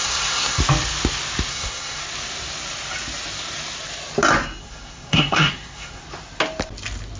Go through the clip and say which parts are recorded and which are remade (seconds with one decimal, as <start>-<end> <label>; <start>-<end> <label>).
0.0-0.6 remade; 0.6-1.5 recorded; 1.5-2.0 remade; 2.0-4.6 recorded; 4.6-6.0 remade; 6.0-7.2 recorded